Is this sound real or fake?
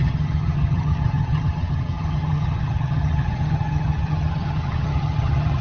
fake